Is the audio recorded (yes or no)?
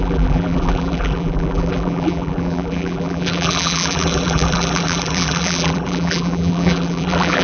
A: no